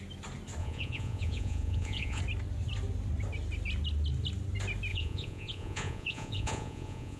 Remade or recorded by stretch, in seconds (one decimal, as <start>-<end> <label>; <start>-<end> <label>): 0.0-0.6 recorded; 0.6-2.2 remade; 2.2-4.9 recorded; 4.9-7.2 remade